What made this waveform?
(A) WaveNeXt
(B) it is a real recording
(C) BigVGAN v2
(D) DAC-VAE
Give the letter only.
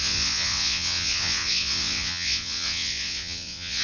A